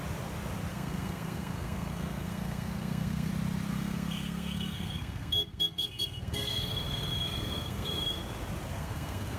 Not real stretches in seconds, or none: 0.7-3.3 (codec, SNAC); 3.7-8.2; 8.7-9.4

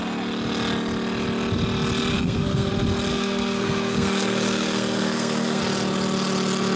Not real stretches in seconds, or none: 2.1-2.7 (codec, SNAC); 3.1-5.6

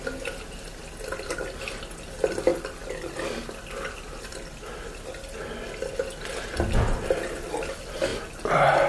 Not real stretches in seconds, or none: none

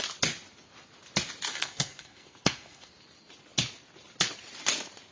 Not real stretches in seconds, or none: 1.5-2.9 (codec, SNAC)

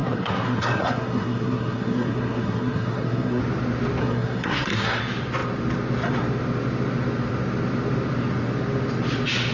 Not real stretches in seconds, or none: 0.0-3.4 (codec, SNAC); 4.0-5.0

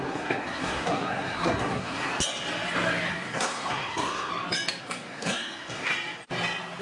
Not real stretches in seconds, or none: 0.0-2.1 (codec, SNAC); 3.1-4.3; 4.8-5.9

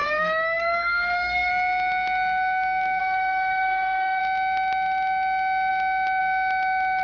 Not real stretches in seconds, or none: 0.0-1.5 (codec, SNAC); 3.0-4.2

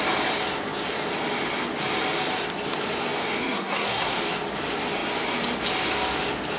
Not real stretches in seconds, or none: 3.4-4.2 (codec, SNAC)